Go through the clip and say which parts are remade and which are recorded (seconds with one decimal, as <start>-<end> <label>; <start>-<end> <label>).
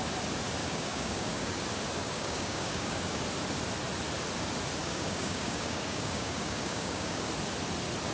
0.0-0.6 recorded; 0.6-1.6 remade; 1.6-2.0 recorded; 2.0-3.2 remade; 3.2-4.8 recorded; 4.8-7.3 remade; 7.3-8.1 recorded